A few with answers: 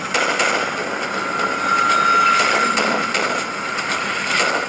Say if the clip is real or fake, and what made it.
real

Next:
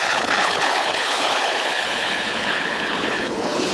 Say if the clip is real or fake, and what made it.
fake, codec, HILCodec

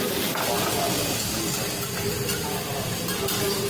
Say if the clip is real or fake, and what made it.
real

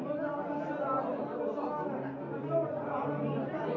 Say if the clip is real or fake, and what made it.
real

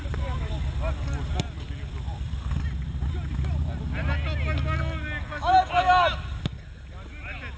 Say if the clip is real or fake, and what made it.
real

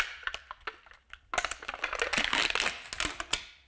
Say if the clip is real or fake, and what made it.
real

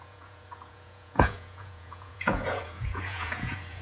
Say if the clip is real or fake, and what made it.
fake, vocoder, Vocos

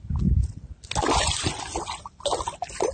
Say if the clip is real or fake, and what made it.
real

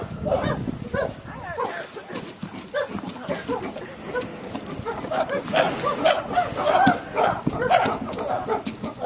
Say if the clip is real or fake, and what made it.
real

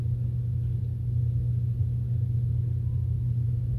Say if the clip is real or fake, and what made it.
real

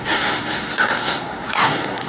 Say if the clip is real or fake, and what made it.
fake, codec, SNAC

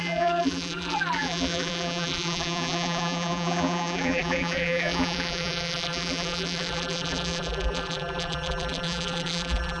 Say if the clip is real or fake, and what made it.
fake, vocoder, BigVGAN v2